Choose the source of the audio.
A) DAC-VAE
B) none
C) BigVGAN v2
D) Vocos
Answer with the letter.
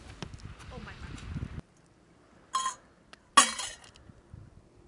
B